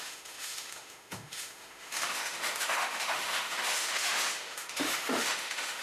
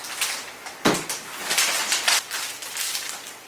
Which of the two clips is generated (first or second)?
first